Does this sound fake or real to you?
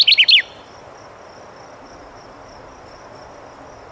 real